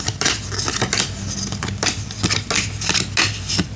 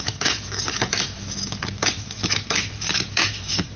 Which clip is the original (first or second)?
first